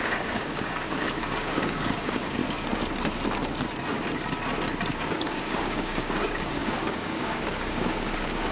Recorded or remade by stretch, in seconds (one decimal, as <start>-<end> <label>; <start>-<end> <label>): 0.0-2.4 remade; 2.4-4.9 recorded; 4.9-8.5 remade